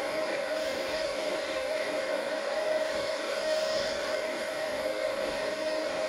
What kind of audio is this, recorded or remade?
remade